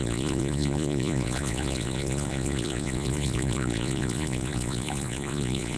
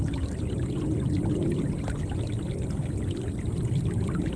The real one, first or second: second